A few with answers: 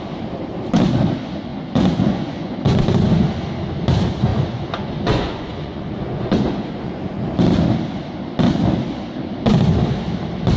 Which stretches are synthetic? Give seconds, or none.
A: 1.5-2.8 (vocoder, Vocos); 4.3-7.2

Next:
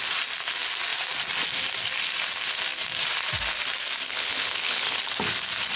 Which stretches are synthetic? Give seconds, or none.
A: 4.1-5.0 (codec, HILCodec)

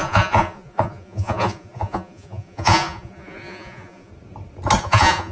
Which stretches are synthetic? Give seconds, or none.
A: 0.0-4.1 (vocoder, Vocos); 4.8-5.3

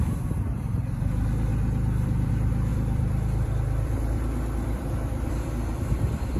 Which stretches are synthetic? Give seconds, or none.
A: 1.5-2.3 (vocoder, BigVGAN v2); 2.7-6.4

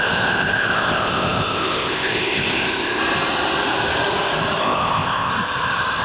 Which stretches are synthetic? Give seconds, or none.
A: 0.0-3.0 (codec, ZipCodec); 4.6-5.3

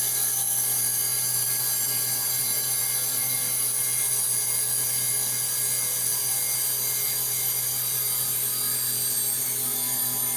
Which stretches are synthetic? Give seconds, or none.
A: none

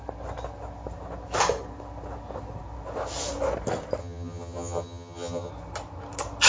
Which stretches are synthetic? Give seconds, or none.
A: 4.0-5.5 (vocoder, HiFi-GAN)